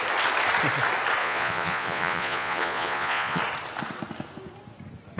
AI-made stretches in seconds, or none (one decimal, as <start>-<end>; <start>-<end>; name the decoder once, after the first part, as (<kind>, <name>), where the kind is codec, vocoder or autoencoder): 1.2-3.4 (vocoder, Vocos)